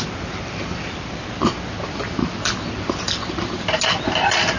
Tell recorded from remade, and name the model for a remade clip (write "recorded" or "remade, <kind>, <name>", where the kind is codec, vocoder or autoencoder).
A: recorded